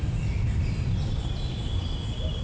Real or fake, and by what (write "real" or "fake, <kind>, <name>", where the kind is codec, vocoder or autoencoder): real